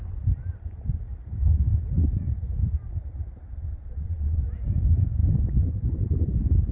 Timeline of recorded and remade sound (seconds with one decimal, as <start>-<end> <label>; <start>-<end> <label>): 0.0-3.7 recorded; 3.7-4.4 remade; 4.4-6.7 recorded